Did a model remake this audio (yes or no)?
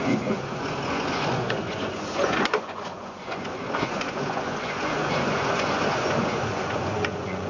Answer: yes